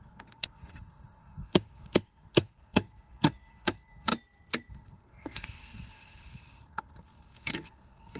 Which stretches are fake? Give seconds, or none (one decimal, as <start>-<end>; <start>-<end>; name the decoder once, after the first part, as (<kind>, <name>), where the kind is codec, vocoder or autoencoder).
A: 0.0-4.1 (codec, SNAC); 4.7-8.2